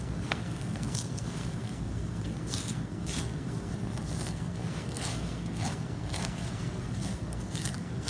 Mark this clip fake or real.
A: fake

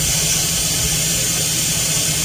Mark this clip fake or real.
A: real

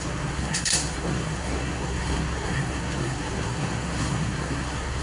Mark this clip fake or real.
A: fake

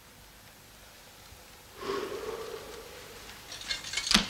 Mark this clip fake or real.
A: real